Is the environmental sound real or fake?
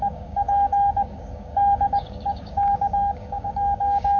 fake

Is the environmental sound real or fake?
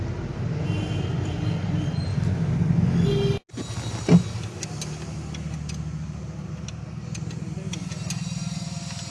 real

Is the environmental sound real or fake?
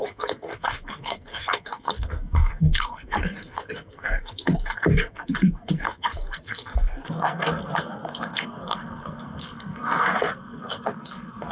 fake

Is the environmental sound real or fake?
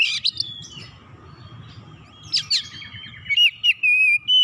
real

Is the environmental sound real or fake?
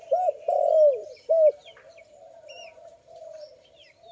fake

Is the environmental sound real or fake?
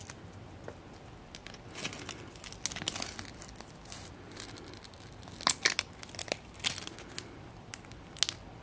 real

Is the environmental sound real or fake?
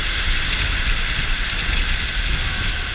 real